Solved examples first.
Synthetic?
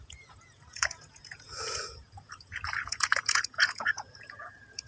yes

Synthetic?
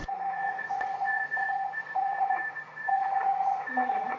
yes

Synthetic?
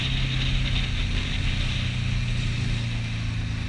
no